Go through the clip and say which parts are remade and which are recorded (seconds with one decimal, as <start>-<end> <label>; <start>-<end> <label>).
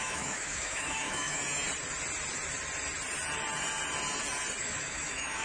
0.0-1.4 remade; 1.4-4.6 recorded; 4.6-5.4 remade